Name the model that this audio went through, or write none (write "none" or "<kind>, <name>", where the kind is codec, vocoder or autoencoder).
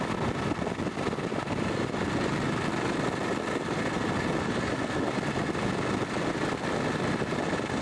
none